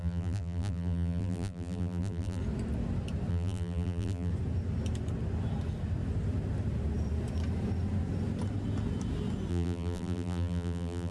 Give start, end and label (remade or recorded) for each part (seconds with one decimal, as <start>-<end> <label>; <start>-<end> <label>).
0.0-2.4 remade; 2.4-3.3 recorded; 3.3-4.3 remade; 4.3-9.5 recorded; 9.5-11.1 remade